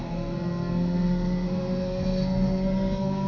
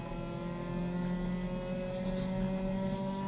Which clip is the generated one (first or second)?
first